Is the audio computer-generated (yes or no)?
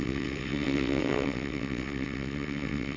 yes